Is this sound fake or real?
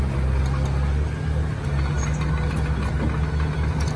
real